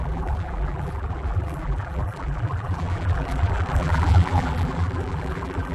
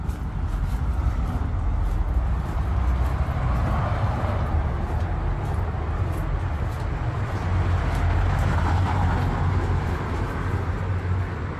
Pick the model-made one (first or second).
first